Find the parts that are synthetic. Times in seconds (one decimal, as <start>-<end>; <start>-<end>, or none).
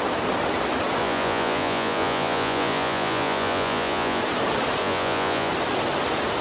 1.0-4.2; 4.8-5.5